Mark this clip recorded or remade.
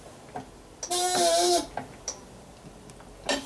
recorded